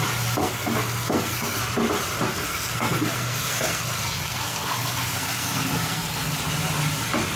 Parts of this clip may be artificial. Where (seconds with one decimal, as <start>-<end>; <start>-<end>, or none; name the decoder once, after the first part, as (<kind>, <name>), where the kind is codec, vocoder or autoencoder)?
0.4-1.6 (codec, SNAC); 2.3-6.4